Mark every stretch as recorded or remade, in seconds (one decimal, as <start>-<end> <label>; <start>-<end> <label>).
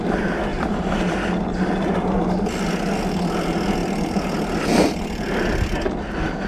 0.0-0.5 recorded; 0.5-1.2 remade; 1.2-6.5 recorded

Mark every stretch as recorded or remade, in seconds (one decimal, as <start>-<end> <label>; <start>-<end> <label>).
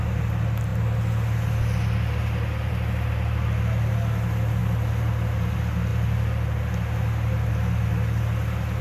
0.0-8.8 recorded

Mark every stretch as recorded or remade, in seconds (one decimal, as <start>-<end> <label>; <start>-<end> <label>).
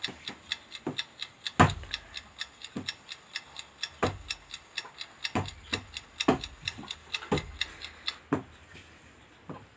0.0-9.8 recorded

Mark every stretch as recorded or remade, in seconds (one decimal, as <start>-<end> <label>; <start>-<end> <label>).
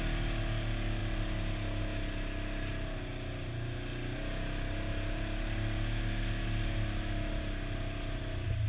0.0-8.7 recorded